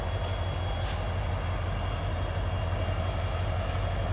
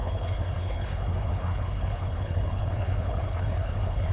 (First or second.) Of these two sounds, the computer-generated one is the second